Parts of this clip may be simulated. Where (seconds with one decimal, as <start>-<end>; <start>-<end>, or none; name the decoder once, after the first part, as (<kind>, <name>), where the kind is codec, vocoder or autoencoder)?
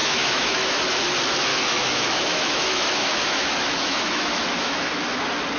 0.0-0.8 (autoencoder, DAC-VAE); 1.5-4.9